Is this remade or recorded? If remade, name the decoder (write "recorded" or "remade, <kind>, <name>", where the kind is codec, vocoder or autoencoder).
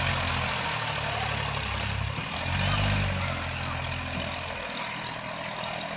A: recorded